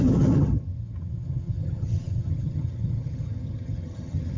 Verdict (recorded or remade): remade